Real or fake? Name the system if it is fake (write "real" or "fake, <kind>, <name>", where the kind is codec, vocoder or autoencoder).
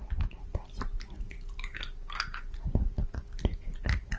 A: real